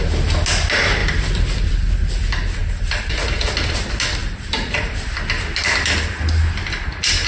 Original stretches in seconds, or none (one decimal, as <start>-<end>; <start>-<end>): 0.0-1.0; 1.9-4.2; 5.1-7.3